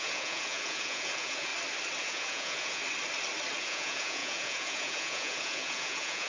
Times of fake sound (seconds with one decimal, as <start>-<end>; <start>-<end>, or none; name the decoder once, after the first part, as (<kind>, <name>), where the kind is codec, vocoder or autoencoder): 0.0-1.5 (vocoder, Vocos); 2.0-2.8; 3.6-6.3